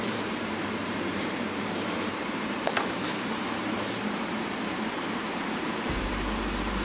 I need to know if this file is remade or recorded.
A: remade